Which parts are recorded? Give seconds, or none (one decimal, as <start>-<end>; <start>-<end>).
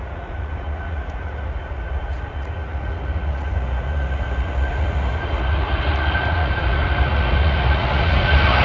none